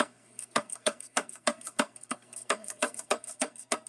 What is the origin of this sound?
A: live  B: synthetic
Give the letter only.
B